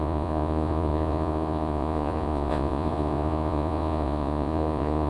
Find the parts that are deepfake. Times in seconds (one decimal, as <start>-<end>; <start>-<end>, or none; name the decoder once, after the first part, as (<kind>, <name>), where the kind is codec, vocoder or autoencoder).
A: 0.0-5.1 (vocoder, Vocos)